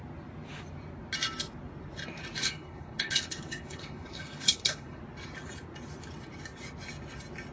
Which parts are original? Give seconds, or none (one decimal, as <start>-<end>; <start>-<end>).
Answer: 0.0-2.4; 5.0-7.5